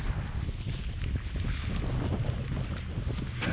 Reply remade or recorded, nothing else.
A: recorded